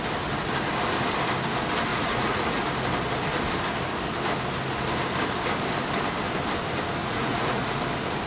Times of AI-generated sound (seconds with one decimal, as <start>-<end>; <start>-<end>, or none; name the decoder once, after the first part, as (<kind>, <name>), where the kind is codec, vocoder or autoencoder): 1.9-2.6 (vocoder, Vocos); 7.0-7.8